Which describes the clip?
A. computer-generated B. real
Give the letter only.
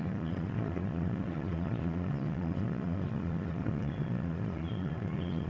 A